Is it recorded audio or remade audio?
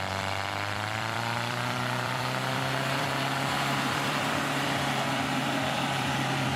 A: remade